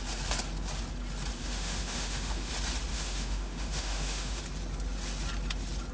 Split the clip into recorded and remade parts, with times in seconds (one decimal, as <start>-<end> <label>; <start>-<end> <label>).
0.0-1.4 recorded; 1.4-2.5 remade; 2.5-2.9 recorded; 2.9-4.4 remade; 4.4-5.9 recorded